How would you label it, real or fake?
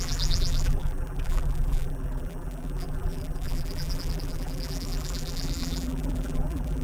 fake